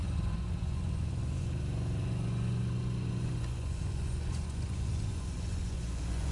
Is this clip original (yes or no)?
no